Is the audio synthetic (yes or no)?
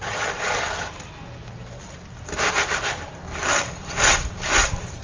no